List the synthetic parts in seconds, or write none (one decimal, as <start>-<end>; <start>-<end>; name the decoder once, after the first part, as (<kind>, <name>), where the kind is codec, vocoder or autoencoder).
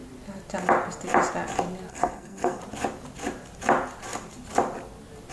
1.9-2.6 (codec, SNAC)